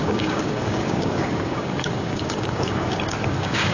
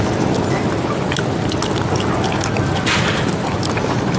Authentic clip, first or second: second